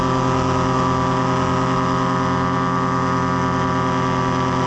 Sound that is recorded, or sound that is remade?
recorded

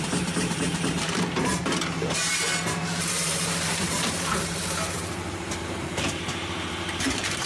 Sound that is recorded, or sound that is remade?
remade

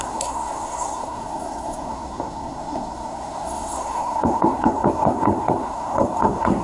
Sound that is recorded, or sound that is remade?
remade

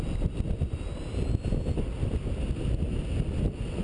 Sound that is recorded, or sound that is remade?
recorded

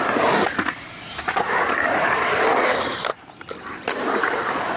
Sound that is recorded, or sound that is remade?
remade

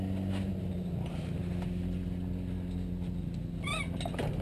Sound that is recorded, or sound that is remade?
recorded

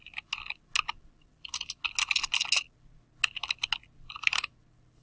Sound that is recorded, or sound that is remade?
recorded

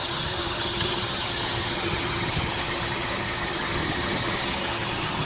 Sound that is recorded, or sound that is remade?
remade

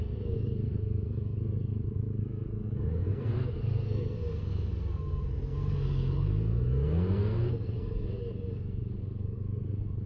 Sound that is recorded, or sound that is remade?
remade